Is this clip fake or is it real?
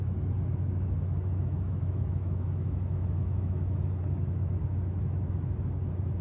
fake